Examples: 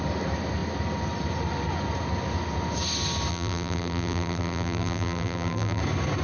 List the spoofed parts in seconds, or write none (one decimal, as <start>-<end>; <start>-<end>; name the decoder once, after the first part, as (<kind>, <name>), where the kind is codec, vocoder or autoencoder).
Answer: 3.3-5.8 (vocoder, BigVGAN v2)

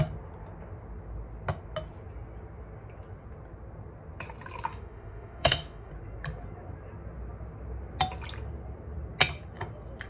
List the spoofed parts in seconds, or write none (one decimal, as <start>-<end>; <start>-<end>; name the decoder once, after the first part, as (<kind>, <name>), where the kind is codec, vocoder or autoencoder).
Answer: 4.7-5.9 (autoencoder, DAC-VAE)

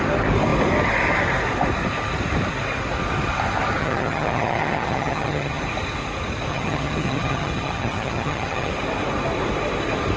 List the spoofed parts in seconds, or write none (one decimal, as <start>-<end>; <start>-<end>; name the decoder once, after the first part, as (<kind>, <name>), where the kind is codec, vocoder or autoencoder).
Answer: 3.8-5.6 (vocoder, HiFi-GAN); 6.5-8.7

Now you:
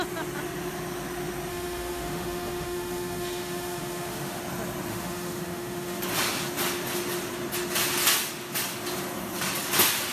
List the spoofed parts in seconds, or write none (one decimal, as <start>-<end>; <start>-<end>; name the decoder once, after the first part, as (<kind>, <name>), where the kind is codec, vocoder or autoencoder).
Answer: 1.5-4.4 (autoencoder, DAC-VAE); 4.9-6.0

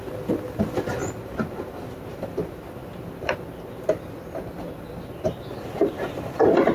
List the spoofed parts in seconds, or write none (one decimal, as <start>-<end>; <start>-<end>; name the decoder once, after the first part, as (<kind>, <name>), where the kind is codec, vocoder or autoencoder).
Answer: none

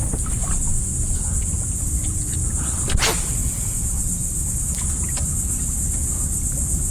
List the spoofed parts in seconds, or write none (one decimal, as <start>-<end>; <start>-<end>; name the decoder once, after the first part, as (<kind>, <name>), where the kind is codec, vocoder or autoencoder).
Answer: 0.7-2.6 (vocoder, Vocos); 3.4-4.0